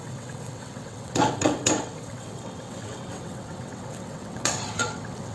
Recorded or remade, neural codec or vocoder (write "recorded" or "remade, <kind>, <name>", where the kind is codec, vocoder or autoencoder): remade, vocoder, WaveNeXt